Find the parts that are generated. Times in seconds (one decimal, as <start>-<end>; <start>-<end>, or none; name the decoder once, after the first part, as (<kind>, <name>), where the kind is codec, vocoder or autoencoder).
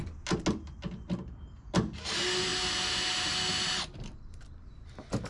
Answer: none